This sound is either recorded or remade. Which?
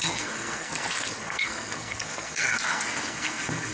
remade